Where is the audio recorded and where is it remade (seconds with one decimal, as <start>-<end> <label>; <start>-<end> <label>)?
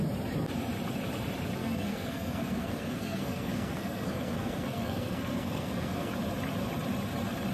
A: 0.0-1.6 recorded; 1.6-6.1 remade; 6.1-7.5 recorded